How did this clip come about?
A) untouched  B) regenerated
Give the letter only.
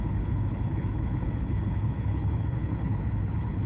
B